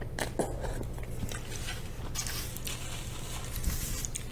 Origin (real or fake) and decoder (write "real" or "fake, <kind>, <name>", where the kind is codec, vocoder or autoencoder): real